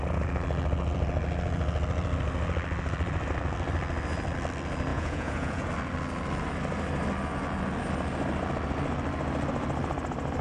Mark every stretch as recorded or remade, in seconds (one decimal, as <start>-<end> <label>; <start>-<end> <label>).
0.0-4.9 recorded; 4.9-5.7 remade; 5.7-10.4 recorded